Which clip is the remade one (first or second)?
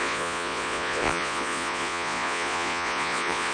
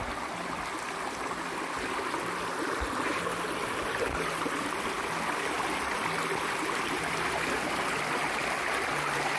first